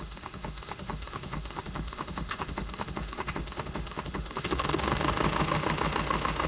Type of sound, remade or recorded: remade